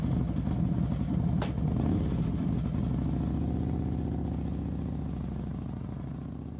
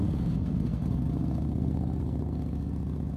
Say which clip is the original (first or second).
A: first